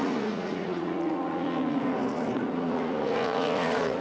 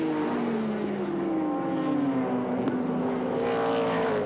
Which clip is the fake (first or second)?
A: first